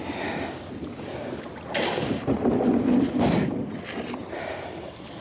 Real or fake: fake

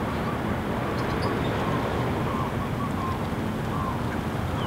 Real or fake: real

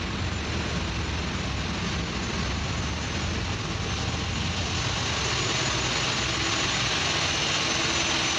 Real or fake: real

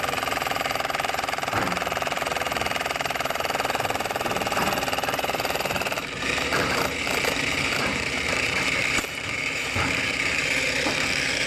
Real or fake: fake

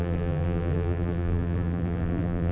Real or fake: fake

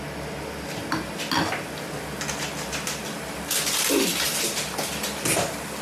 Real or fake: real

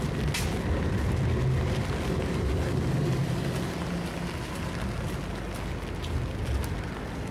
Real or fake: real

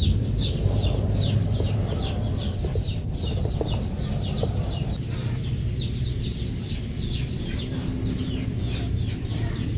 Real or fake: real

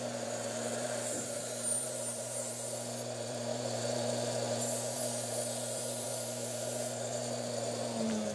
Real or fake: fake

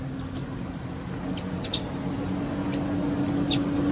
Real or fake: real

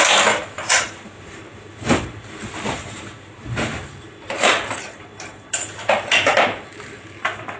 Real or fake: fake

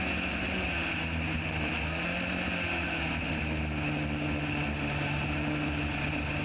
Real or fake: real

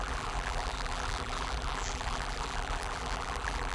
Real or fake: fake